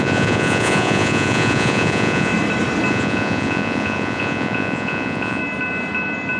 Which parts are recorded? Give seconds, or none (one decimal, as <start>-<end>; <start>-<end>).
2.3-2.9; 5.4-6.4

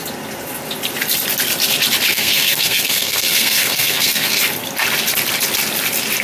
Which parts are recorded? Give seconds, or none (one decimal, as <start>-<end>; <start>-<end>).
0.0-2.1; 4.4-6.2

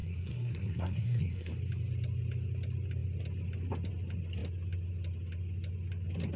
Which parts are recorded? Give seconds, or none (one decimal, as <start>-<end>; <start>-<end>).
1.5-6.4

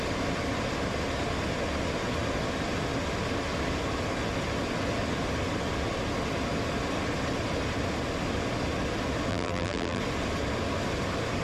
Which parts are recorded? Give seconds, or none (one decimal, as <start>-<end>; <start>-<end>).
0.0-9.3; 10.0-11.4

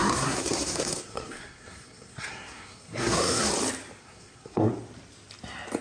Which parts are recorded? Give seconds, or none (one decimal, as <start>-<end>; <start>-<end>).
3.5-4.0; 4.7-5.8

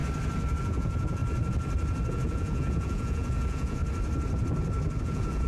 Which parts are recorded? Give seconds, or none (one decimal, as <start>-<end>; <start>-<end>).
0.0-0.6; 1.2-2.1; 3.8-5.0